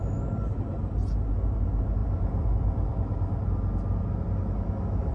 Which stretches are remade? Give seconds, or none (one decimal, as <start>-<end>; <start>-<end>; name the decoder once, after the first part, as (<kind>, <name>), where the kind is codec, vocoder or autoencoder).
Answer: none